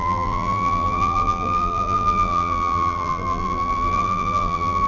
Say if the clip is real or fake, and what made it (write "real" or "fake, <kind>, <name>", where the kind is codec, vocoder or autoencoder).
fake, vocoder, BigVGAN v2